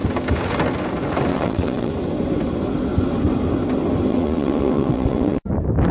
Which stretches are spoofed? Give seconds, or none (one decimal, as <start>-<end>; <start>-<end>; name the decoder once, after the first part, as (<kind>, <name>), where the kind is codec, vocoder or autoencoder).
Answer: 1.3-1.9 (vocoder, WaveNeXt); 4.1-5.4